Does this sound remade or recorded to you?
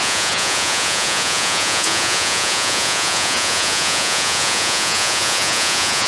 remade